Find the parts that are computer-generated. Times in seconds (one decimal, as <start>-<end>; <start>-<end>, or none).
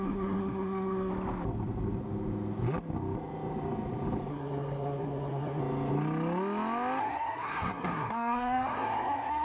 0.0-1.1; 4.3-5.6; 7.0-9.4